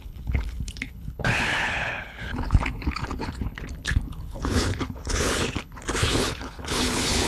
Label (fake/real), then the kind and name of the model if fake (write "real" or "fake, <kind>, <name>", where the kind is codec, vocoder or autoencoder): fake, codec, HILCodec